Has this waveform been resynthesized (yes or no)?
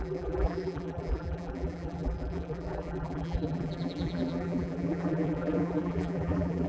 yes